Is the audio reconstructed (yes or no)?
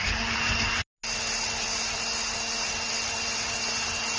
no